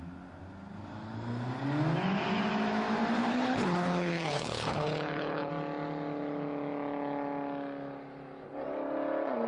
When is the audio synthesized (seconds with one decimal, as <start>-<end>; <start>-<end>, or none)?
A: 3.3-5.5